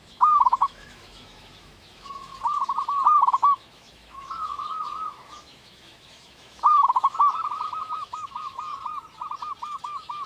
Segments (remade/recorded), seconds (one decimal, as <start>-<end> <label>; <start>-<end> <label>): 0.0-2.3 remade; 2.3-3.2 recorded; 3.2-8.7 remade; 8.7-9.8 recorded; 9.8-10.3 remade